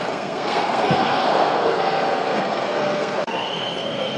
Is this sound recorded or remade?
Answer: remade